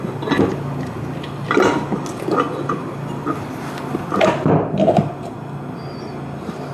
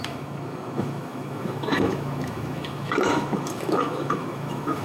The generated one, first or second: second